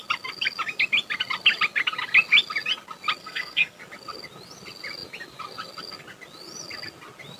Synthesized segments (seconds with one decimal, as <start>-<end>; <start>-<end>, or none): 3.2-3.8